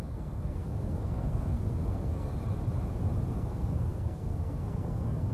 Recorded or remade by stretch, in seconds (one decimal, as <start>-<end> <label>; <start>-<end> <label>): 0.0-2.3 remade; 2.3-3.3 recorded; 3.3-5.3 remade